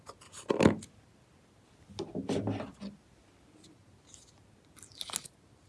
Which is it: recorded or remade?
recorded